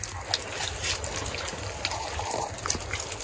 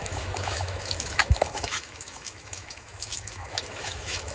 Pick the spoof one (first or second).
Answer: second